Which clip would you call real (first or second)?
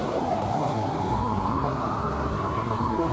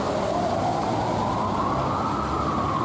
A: second